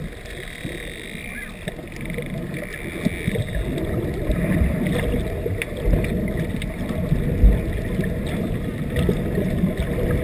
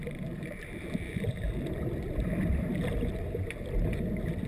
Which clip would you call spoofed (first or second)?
second